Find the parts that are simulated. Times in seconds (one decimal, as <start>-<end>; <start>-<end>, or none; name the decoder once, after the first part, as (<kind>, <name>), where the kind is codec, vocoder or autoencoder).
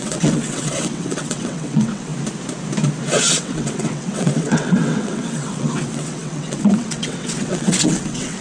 0.0-2.1 (vocoder, WaveNeXt); 3.0-8.4